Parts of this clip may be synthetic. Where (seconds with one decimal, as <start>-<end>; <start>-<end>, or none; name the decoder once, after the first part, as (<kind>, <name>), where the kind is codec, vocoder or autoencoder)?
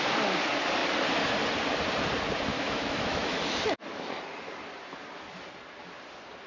2.5-4.1 (autoencoder, DAC-VAE)